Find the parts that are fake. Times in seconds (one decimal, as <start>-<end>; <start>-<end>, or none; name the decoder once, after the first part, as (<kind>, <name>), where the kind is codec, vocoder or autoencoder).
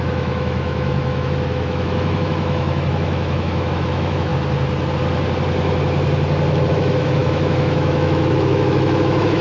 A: 0.0-4.3 (autoencoder, DAC-VAE); 6.7-9.4